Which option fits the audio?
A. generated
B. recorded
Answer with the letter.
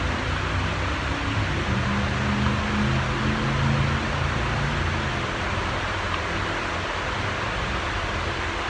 B